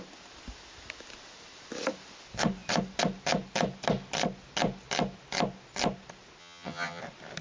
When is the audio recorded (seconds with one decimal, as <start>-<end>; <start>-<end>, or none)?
0.0-6.4; 7.0-7.4